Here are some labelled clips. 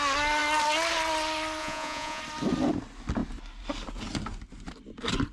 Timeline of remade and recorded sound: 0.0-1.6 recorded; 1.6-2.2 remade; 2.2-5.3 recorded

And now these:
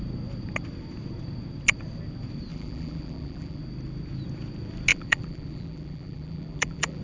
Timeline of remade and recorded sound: 0.0-2.5 recorded; 2.5-3.6 remade; 3.6-4.9 recorded; 4.9-7.0 remade

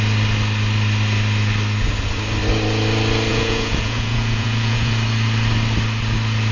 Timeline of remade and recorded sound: 0.0-3.3 recorded; 3.3-4.9 remade; 4.9-6.5 recorded

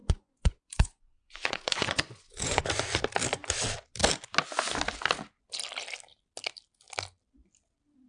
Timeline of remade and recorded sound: 0.0-2.6 remade; 2.6-8.1 recorded